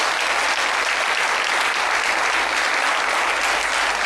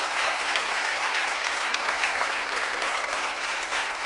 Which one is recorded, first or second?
first